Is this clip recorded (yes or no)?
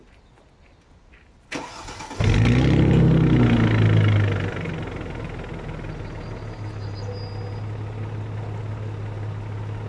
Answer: yes